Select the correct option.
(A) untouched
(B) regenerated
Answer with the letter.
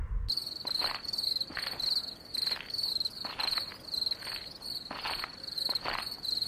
A